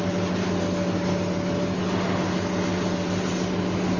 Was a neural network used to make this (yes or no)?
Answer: no